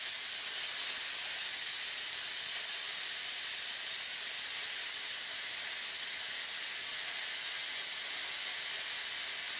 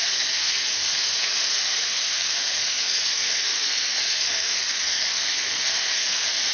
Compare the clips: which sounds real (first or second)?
first